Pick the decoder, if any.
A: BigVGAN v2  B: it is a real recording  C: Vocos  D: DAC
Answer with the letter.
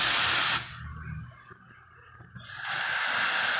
B